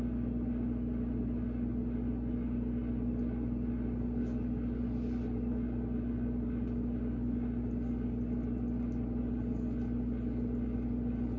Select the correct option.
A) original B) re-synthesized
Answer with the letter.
A